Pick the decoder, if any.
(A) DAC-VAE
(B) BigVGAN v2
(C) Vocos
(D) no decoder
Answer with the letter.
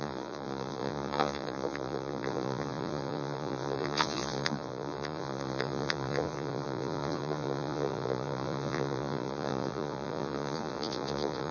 C